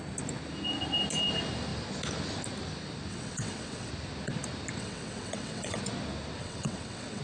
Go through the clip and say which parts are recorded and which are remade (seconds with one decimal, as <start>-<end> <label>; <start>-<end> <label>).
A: 0.0-3.1 recorded; 3.1-3.9 remade; 3.9-4.8 recorded; 4.8-5.8 remade; 5.8-6.4 recorded; 6.4-7.2 remade